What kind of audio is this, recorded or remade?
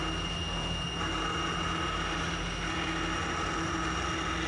recorded